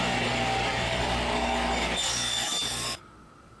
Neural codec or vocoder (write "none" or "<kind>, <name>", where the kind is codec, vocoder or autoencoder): codec, DAC